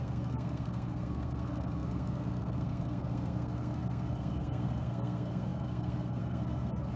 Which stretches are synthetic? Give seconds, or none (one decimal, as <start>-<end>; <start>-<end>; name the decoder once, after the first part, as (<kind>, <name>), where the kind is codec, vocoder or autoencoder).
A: 0.0-7.0 (codec, SNAC)